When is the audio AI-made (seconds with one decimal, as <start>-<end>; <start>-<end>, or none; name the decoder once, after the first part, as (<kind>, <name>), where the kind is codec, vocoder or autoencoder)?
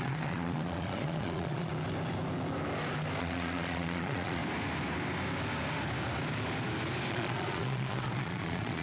0.0-1.7 (vocoder, Vocos); 3.2-4.4; 7.1-8.8